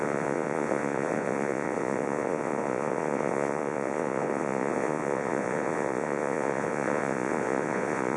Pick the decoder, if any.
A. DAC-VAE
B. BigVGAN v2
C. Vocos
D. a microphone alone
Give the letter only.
C